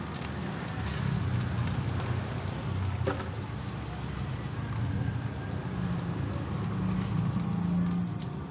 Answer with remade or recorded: recorded